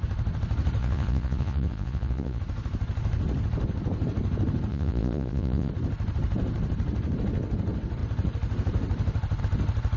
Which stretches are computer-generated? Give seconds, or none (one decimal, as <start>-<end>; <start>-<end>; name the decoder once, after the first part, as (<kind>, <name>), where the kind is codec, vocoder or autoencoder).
0.8-2.4 (vocoder, Vocos); 4.7-5.7